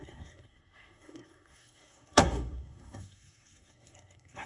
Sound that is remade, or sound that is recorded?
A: remade